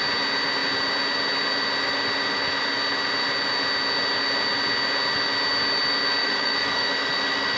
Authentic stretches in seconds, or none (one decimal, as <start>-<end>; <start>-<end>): 0.0-6.2; 7.1-7.6